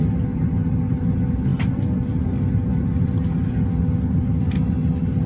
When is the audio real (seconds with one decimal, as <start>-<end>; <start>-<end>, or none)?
0.0-5.3